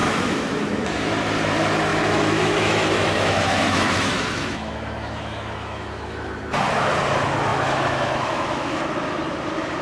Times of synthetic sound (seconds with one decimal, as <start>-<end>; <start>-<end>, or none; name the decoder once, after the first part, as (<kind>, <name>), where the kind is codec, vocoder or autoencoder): 0.0-1.1 (autoencoder, DAC-VAE); 1.9-6.3; 7.5-8.8